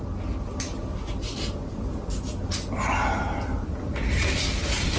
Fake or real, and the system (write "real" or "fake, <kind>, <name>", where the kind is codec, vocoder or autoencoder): real